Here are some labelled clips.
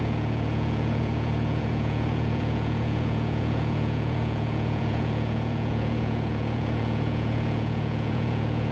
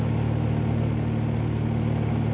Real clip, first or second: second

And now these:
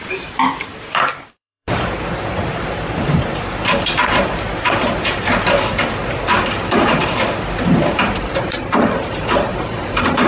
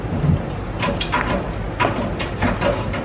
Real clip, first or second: second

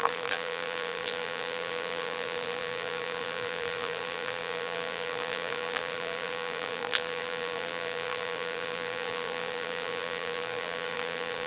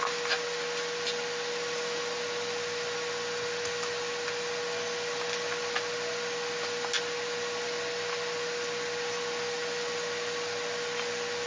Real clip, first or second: second